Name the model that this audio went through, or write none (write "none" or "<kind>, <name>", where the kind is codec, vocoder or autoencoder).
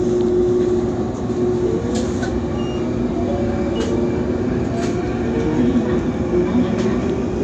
none